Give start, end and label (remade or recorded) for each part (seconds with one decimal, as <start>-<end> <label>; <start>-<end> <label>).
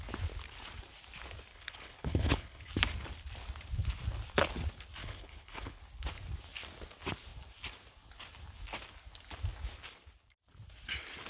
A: 0.0-1.5 recorded; 1.5-2.7 remade; 2.7-5.0 recorded; 5.0-5.8 remade; 5.8-11.3 recorded